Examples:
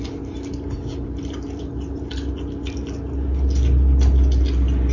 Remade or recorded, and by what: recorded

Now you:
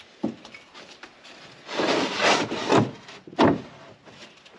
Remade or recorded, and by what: recorded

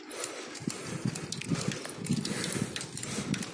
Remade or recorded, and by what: recorded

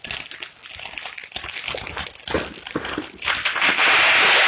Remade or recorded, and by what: recorded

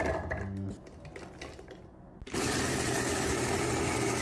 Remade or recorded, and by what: recorded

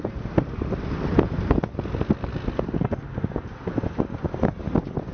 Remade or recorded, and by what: recorded